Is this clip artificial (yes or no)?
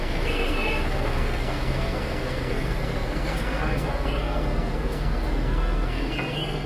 yes